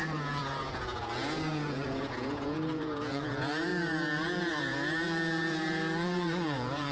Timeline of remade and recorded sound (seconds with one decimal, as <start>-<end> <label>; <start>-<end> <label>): 0.0-6.9 remade